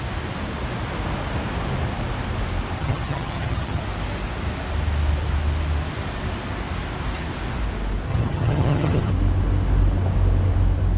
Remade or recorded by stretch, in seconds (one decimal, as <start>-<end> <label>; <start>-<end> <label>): 0.0-2.8 recorded; 2.8-3.8 remade; 3.8-8.1 recorded; 8.1-9.1 remade; 9.1-11.0 recorded